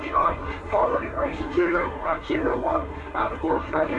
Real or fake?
fake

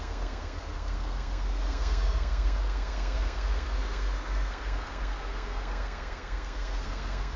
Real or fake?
fake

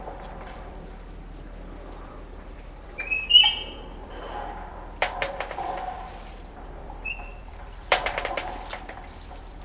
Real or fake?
fake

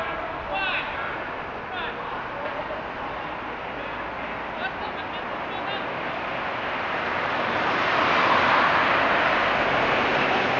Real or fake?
real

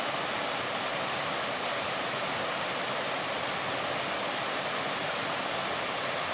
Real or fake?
real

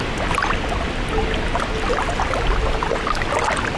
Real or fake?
real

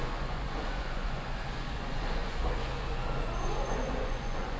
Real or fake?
fake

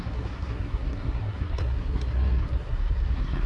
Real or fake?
fake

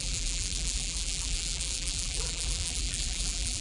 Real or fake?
fake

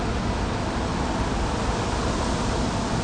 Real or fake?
real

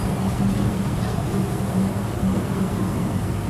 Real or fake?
fake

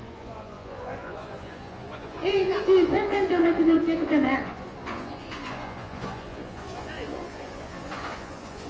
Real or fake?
fake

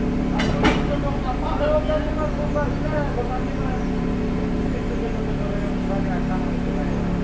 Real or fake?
real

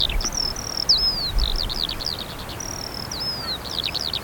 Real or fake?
real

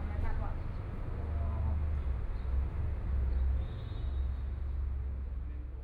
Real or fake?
real